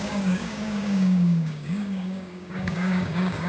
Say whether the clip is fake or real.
fake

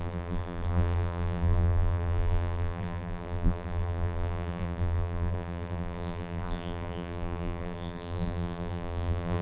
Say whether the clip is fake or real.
fake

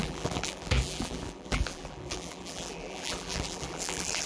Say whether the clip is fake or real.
fake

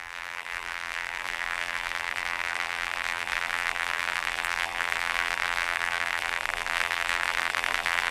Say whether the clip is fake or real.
fake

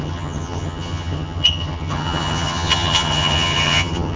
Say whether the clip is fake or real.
fake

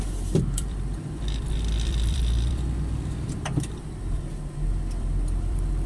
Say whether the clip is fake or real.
fake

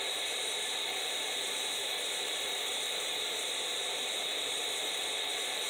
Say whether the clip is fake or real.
fake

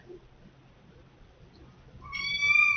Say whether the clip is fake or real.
real